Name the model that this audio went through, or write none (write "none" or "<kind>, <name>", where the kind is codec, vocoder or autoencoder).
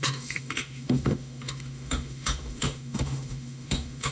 autoencoder, DAC-VAE